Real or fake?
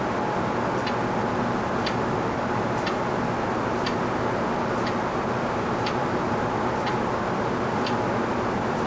real